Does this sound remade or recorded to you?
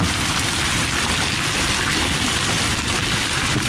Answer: recorded